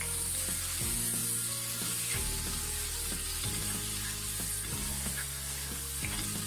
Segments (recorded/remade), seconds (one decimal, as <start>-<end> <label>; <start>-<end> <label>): 0.0-4.9 recorded; 4.9-6.0 remade; 6.0-6.5 recorded